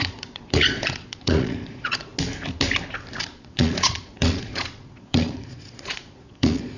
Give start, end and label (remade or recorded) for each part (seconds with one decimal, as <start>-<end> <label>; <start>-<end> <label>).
0.0-2.1 remade; 2.1-3.2 recorded; 3.2-6.8 remade